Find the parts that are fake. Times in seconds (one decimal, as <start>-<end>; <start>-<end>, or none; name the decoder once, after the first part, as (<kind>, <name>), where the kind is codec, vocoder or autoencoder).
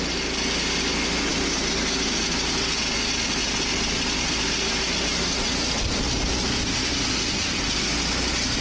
5.5-7.1 (vocoder, BigVGAN v2)